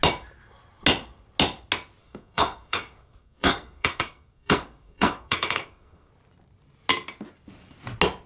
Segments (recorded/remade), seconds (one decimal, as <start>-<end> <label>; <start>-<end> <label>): 0.0-2.0 recorded; 2.0-6.1 remade; 6.1-8.3 recorded